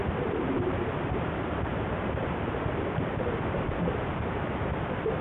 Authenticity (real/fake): fake